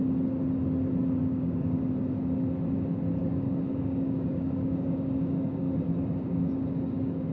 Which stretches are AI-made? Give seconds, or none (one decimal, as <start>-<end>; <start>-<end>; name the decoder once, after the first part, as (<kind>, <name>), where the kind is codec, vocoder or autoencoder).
1.2-1.8 (codec, DAC); 3.2-7.3